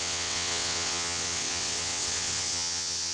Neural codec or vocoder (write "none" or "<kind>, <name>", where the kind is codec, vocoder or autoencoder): vocoder, WaveNeXt